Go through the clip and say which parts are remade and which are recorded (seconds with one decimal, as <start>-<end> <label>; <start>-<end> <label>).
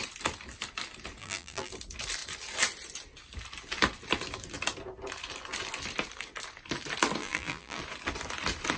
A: 0.0-1.2 recorded; 1.2-1.7 remade; 1.7-7.2 recorded; 7.2-7.8 remade; 7.8-8.8 recorded